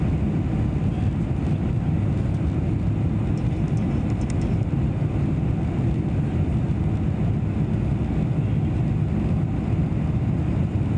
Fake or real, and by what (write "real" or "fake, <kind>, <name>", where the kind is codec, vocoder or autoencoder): real